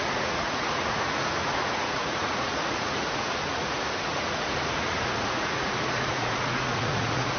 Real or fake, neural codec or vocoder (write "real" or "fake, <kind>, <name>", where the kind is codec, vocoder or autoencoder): fake, vocoder, Vocos